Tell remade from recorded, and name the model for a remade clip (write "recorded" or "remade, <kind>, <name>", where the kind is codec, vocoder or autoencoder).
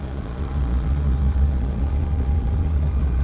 remade, vocoder, Vocos